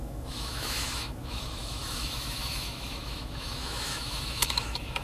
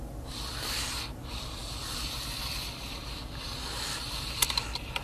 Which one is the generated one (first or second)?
first